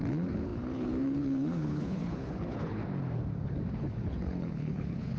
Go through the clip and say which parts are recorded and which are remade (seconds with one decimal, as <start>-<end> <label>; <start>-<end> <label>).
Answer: 0.0-2.8 remade; 2.8-3.7 recorded; 3.7-5.2 remade